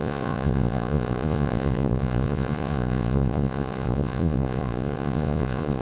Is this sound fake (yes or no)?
yes